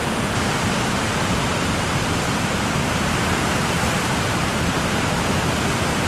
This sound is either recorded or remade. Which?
remade